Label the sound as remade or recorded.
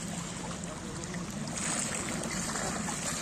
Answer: recorded